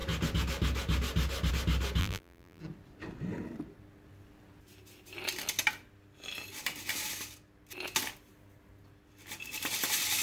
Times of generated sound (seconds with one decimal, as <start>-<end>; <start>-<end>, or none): 2.0-2.6